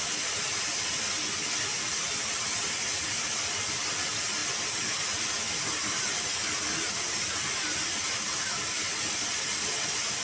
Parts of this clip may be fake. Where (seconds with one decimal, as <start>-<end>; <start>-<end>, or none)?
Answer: none